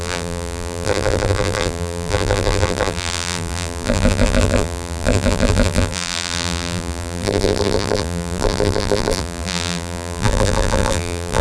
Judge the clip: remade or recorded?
remade